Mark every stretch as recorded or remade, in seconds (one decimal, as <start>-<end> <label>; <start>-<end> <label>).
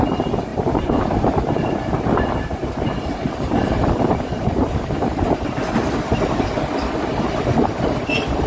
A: 0.0-0.5 recorded; 0.5-5.6 remade; 5.6-8.5 recorded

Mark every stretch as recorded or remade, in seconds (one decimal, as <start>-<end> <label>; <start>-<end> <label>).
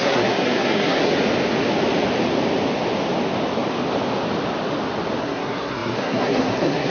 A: 0.0-1.1 remade; 1.1-5.2 recorded; 5.2-6.9 remade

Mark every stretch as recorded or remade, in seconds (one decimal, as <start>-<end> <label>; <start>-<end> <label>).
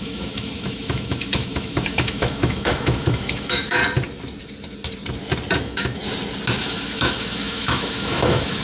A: 0.0-3.8 remade; 3.8-5.6 recorded; 5.6-6.0 remade; 6.0-6.6 recorded; 6.6-8.6 remade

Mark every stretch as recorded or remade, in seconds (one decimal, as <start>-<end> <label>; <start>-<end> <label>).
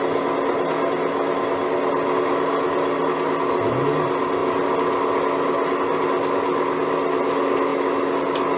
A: 0.0-8.6 recorded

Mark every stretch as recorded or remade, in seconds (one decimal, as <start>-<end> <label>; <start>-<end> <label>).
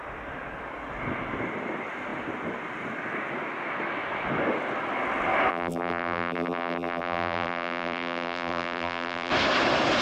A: 0.0-5.5 recorded; 5.5-9.3 remade; 9.3-10.0 recorded